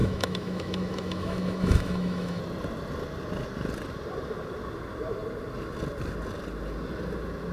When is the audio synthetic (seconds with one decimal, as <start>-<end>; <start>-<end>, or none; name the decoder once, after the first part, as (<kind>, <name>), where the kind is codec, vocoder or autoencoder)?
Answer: 0.0-2.4 (autoencoder, DAC-VAE)